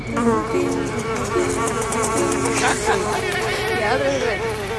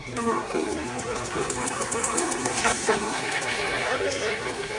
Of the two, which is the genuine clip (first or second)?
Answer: first